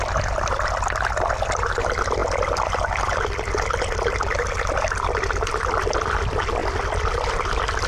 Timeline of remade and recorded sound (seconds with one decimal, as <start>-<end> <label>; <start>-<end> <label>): 0.0-7.9 recorded